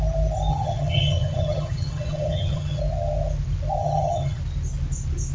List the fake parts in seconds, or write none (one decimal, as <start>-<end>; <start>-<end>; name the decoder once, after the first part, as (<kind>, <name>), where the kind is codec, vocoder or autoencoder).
0.5-2.8 (vocoder, HiFi-GAN); 3.8-4.4